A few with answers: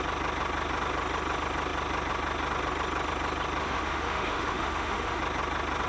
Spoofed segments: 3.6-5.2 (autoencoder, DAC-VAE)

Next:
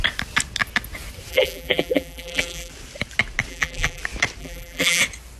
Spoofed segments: 1.3-2.7 (vocoder, BigVGAN v2); 3.5-4.0; 4.4-5.0

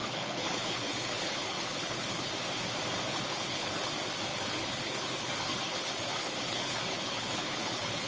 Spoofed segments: 0.0-2.3 (codec, HILCodec); 3.1-3.9; 4.3-8.1

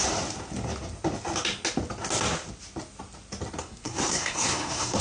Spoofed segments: 3.6-5.0 (codec, SNAC)